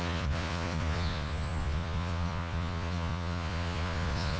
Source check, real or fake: fake